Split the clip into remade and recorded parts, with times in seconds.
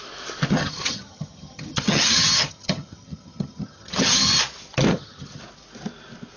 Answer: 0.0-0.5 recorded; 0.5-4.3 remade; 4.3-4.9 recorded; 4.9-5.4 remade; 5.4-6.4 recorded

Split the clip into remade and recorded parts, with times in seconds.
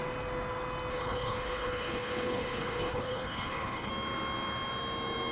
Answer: 0.0-0.9 recorded; 0.9-3.9 remade; 3.9-5.3 recorded